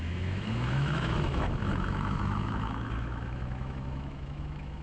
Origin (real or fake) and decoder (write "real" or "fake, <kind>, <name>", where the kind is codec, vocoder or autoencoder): fake, autoencoder, DAC-VAE